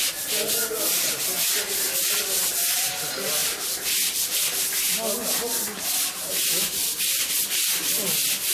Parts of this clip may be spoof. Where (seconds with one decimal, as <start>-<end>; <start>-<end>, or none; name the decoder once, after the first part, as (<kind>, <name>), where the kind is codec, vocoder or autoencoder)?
none